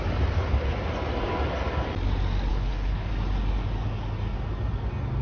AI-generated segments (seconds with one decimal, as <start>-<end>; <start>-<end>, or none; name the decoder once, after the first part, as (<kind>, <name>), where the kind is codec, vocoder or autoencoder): 2.5-3.1 (codec, HILCodec)